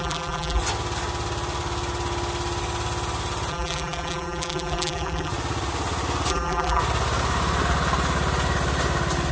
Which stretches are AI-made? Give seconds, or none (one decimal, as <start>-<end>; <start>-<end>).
0.0-0.6; 3.5-5.3; 6.3-6.8